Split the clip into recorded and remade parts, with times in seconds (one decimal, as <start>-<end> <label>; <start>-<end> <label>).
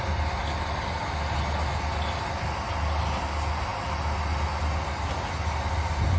0.0-6.2 recorded